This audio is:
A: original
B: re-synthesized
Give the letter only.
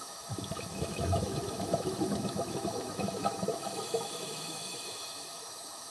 B